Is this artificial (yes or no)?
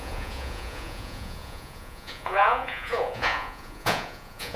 yes